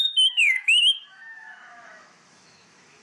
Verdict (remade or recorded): remade